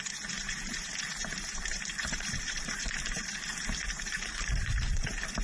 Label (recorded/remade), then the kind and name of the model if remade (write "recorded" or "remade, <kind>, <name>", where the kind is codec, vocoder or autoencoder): remade, vocoder, BigVGAN v2